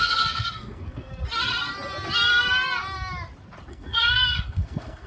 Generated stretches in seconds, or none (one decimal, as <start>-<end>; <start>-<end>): 0.0-1.1; 3.7-5.1